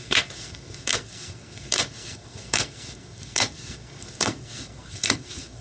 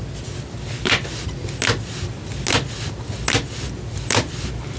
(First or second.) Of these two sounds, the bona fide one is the second